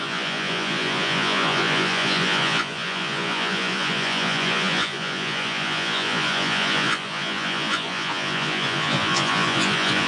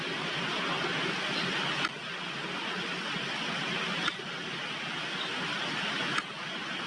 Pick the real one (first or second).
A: second